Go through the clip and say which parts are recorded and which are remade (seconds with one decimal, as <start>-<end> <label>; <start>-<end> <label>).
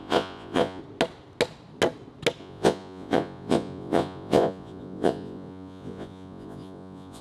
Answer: 0.0-0.8 remade; 0.8-2.4 recorded; 2.4-7.2 remade